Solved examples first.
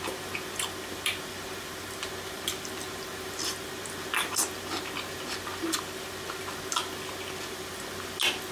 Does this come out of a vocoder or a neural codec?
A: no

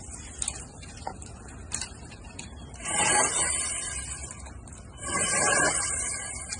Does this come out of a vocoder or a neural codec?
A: yes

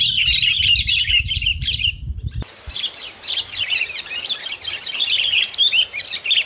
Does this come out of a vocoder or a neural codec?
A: yes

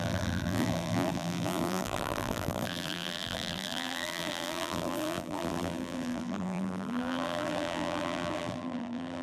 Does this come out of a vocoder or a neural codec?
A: yes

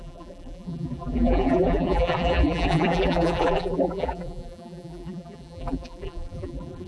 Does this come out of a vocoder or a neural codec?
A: yes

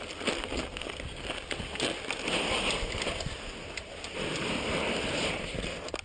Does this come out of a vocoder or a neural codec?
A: no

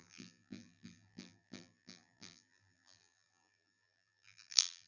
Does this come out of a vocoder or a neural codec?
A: yes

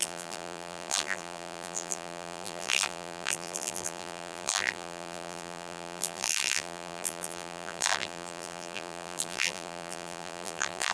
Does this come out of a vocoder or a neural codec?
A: yes